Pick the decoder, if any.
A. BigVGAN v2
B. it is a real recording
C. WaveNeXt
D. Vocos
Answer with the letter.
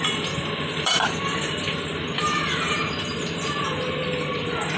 A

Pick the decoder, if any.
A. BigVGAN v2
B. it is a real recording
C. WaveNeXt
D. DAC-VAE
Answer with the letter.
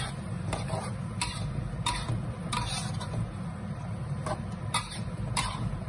A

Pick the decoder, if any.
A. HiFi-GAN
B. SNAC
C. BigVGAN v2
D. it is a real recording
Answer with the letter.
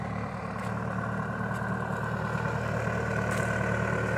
D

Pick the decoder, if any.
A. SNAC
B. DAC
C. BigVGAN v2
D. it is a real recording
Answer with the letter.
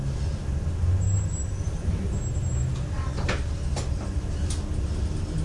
D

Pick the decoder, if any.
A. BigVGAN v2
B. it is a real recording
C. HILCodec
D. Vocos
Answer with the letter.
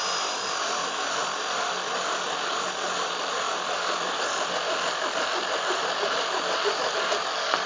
A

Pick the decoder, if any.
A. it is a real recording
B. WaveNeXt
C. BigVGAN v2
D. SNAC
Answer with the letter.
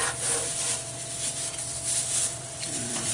C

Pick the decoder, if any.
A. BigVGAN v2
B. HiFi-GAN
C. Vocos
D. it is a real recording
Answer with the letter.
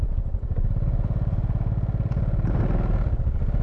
D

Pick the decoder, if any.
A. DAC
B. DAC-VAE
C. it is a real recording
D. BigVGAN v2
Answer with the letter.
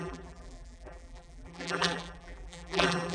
D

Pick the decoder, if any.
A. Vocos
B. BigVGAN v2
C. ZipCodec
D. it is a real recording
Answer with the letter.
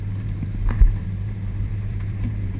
B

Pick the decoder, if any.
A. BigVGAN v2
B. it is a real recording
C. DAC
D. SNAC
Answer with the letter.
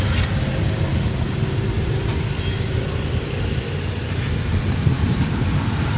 B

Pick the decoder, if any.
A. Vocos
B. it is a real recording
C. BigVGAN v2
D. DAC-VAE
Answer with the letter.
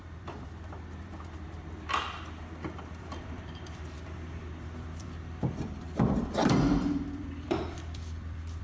C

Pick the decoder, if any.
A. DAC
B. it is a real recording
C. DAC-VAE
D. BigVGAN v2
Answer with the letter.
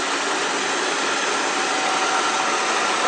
B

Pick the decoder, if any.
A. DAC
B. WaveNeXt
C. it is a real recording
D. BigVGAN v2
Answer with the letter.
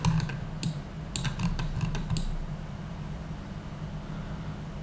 C